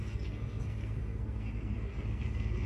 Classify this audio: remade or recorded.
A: remade